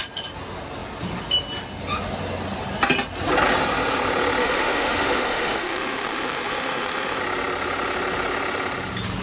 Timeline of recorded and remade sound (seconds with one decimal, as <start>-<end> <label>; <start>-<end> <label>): 0.0-4.4 recorded; 4.4-7.2 remade; 7.2-9.2 recorded